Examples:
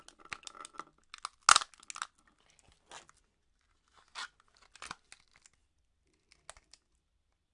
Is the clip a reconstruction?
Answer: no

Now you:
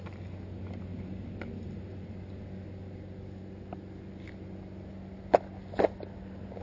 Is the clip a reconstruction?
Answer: no